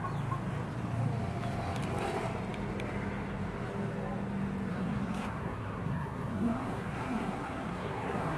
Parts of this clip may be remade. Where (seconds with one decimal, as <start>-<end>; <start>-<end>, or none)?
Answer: 4.7-8.4